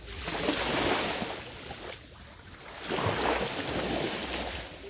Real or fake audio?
real